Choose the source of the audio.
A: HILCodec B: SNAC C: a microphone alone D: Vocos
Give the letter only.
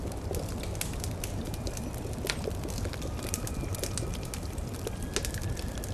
C